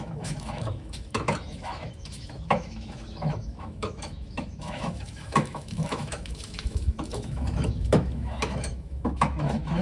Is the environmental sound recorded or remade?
remade